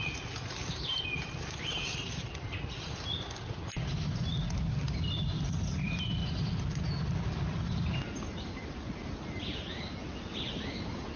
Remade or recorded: recorded